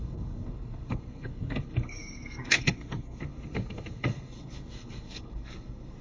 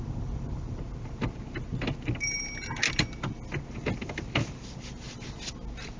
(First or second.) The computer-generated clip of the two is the first